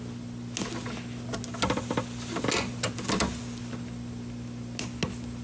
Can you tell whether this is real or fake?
real